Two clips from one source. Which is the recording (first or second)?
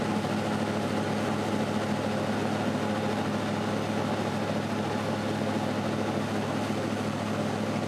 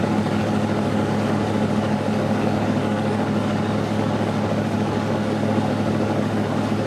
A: first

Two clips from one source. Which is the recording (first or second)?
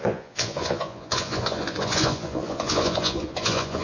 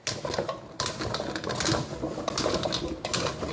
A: second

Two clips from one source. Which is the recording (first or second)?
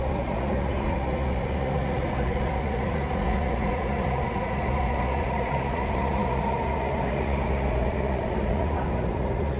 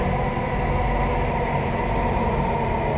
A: second